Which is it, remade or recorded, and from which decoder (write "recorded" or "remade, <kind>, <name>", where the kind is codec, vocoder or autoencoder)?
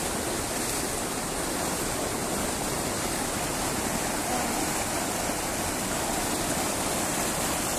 recorded